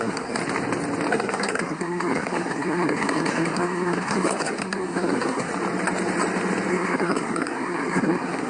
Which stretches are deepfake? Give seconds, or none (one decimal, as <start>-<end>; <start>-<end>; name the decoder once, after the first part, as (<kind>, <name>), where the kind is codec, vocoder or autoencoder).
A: 0.0-0.4 (codec, SNAC); 1.1-5.5; 6.7-8.5